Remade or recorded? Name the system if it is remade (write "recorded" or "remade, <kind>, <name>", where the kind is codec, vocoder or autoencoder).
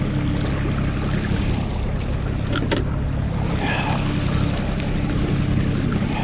recorded